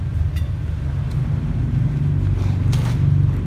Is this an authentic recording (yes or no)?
yes